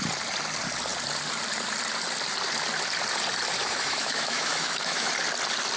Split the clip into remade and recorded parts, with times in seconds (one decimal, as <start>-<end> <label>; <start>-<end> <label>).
0.0-3.6 recorded; 3.6-5.1 remade; 5.1-5.8 recorded